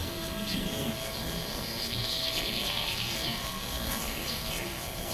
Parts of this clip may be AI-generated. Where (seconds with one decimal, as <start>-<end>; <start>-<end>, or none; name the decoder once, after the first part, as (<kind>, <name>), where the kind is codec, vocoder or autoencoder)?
0.0-5.1 (codec, SNAC)